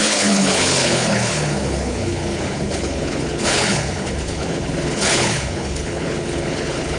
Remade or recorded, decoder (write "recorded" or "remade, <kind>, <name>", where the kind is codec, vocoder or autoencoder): remade, codec, HILCodec